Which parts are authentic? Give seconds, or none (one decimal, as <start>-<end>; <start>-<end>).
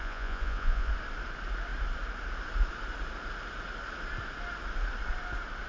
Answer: 0.9-5.7